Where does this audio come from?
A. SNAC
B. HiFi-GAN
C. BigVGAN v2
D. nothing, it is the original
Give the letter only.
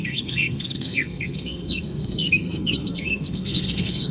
A